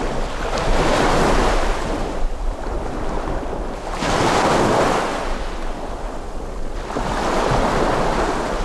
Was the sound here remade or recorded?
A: recorded